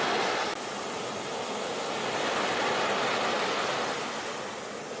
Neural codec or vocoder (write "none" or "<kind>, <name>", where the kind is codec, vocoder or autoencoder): none